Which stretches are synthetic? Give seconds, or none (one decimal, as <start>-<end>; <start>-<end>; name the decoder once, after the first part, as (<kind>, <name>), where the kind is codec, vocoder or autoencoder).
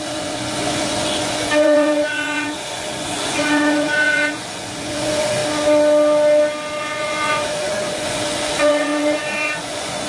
0.0-5.4 (vocoder, Vocos); 6.8-10.1